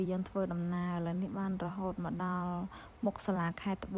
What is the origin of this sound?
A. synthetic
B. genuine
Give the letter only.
A